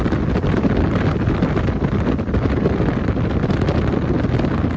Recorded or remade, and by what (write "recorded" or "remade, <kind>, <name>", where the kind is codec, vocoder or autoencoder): recorded